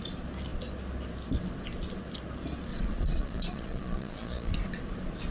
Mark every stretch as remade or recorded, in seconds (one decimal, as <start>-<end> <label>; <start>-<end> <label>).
0.0-2.7 recorded; 2.7-4.5 remade; 4.5-5.3 recorded